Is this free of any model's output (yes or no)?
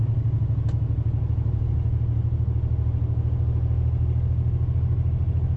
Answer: yes